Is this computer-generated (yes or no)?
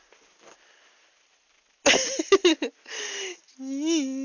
no